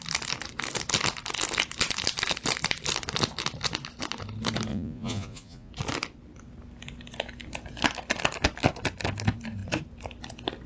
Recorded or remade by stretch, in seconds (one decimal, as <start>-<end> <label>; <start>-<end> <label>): 0.0-4.7 recorded; 4.7-5.7 remade; 5.7-10.7 recorded